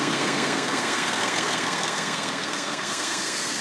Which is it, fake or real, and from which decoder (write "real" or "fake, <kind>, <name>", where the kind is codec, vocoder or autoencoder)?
fake, codec, SNAC